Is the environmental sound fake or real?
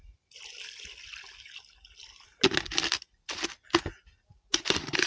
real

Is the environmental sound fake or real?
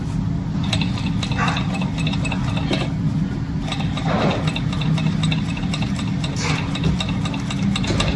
real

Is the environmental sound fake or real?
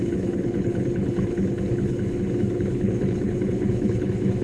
fake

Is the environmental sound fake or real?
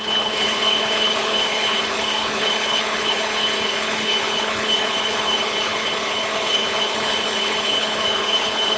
fake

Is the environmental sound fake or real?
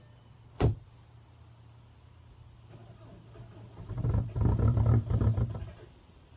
real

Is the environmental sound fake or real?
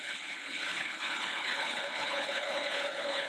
fake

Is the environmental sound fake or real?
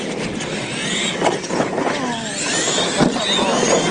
real